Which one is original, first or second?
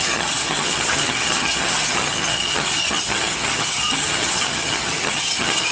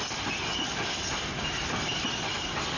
second